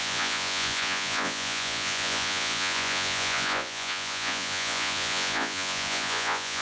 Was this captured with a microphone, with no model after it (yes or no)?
no